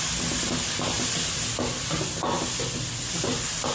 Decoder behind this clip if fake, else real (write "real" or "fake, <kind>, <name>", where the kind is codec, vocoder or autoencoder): real